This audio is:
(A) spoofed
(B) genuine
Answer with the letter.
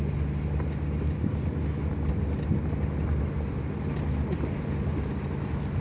B